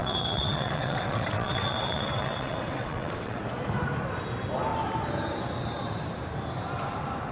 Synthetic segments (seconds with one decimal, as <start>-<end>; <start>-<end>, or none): 0.0-3.4